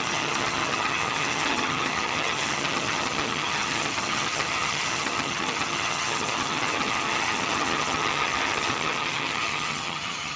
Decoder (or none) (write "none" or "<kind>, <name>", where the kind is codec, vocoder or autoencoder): vocoder, HiFi-GAN